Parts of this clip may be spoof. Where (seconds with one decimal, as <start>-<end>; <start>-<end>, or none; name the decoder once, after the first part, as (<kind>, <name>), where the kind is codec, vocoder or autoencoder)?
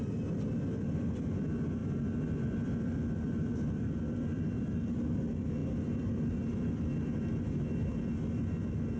none